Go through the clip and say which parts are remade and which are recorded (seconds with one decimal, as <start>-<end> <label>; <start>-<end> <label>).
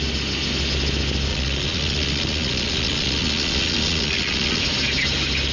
0.0-1.3 recorded; 1.3-4.6 remade; 4.6-5.5 recorded